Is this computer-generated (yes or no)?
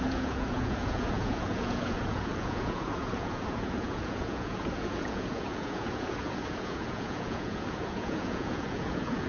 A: yes